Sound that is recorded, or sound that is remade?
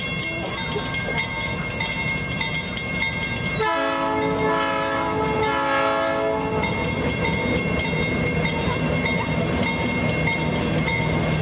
recorded